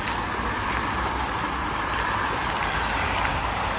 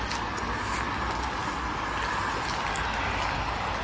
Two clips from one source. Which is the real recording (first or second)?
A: second